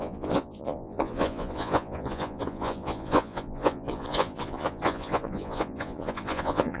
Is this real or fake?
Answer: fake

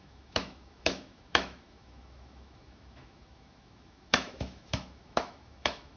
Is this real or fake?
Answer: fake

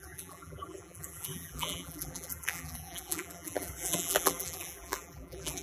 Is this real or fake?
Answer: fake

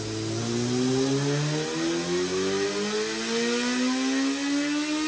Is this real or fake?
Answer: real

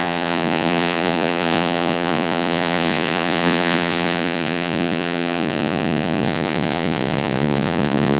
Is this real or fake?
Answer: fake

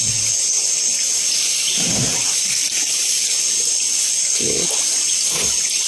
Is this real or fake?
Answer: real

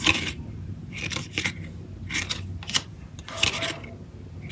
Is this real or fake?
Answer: real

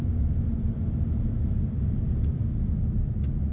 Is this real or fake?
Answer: real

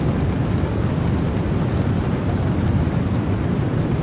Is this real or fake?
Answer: real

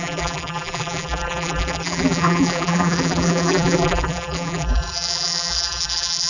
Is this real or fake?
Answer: fake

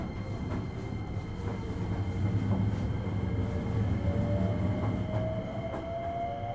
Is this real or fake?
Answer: real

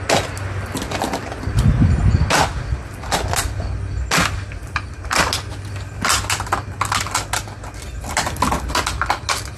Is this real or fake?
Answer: real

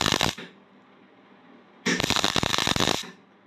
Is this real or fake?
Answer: real